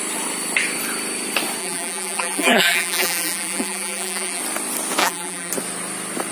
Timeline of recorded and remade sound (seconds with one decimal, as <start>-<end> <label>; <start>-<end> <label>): 0.0-1.6 recorded; 1.6-4.4 remade; 4.4-5.0 recorded; 5.0-5.5 remade; 5.5-6.3 recorded